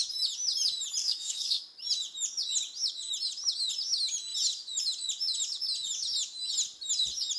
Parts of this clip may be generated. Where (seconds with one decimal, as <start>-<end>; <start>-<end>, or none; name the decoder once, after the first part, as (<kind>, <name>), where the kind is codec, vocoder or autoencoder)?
1.0-1.6 (codec, SNAC)